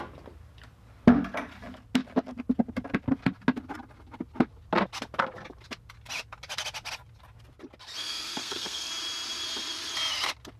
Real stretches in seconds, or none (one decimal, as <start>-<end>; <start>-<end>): 0.0-8.0; 8.9-10.6